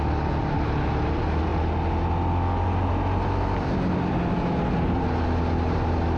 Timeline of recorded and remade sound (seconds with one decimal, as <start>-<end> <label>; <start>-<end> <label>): 0.0-6.2 recorded